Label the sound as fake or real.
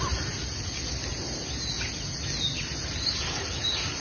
real